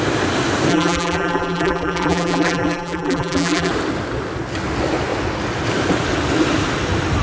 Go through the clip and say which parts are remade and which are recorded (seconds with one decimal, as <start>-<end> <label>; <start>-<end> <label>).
0.0-0.7 recorded; 0.7-3.7 remade; 3.7-7.2 recorded